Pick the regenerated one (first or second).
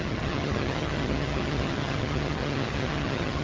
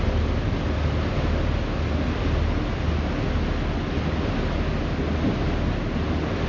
first